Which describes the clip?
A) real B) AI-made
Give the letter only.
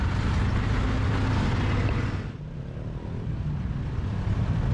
A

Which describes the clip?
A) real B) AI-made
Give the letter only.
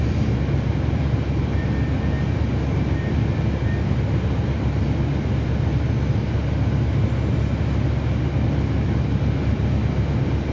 A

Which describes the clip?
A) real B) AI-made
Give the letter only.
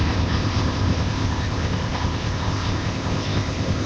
B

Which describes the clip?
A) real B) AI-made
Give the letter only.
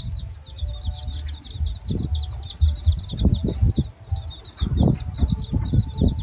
A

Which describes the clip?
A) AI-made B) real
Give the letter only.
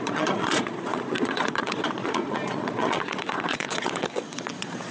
A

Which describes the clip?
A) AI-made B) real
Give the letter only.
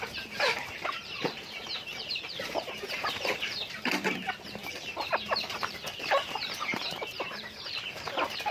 A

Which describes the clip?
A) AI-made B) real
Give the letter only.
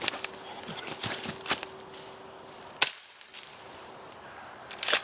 B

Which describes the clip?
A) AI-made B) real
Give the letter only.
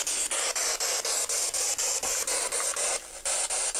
B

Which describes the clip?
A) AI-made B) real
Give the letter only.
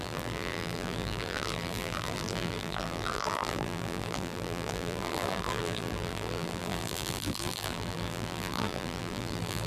A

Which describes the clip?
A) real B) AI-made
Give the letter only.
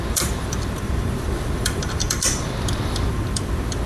B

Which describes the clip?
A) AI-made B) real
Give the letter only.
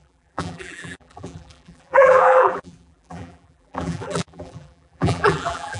A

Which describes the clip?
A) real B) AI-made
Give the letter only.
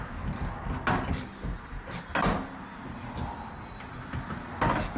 A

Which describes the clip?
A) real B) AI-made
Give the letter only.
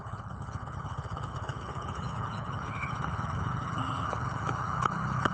B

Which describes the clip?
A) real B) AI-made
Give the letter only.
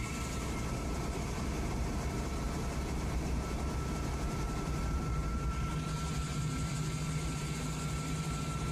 B